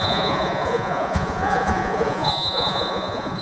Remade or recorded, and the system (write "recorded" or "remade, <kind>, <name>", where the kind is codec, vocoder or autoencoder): remade, vocoder, Vocos